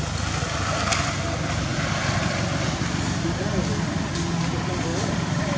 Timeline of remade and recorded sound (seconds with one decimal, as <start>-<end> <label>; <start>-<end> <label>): 0.0-4.9 recorded; 4.9-5.6 remade